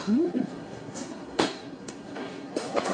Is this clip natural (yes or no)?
no